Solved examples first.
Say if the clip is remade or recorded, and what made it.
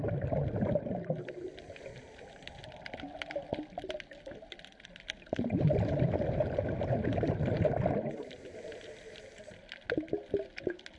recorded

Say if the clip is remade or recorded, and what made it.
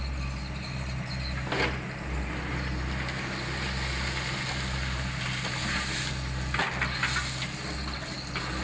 recorded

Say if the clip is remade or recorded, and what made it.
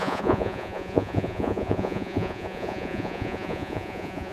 remade, vocoder, Vocos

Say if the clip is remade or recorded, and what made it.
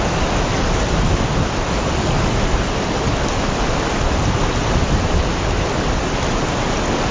recorded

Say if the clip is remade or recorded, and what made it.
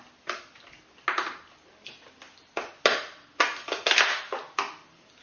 recorded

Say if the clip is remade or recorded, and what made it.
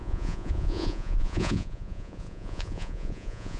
remade, vocoder, Vocos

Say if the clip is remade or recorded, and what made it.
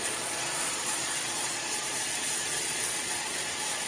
remade, vocoder, Vocos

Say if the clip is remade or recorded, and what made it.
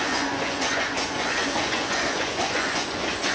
remade, vocoder, Vocos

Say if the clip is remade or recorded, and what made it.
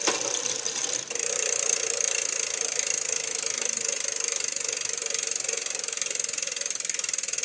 recorded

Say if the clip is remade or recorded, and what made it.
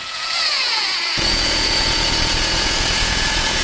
remade, vocoder, Vocos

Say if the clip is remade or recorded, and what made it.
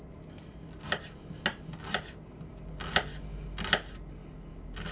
recorded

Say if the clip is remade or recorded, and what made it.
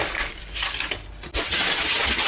recorded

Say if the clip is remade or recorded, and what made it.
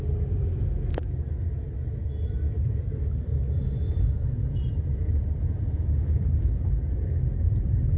recorded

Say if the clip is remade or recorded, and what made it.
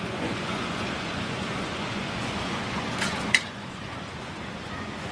remade, vocoder, Vocos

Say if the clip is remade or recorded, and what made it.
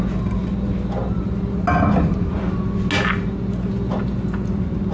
recorded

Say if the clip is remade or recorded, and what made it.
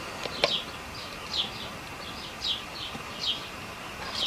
recorded